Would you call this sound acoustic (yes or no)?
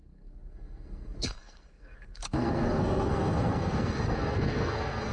no